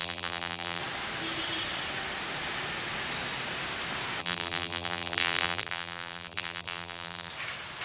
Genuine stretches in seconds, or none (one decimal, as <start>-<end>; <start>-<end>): 0.8-4.2; 7.3-7.8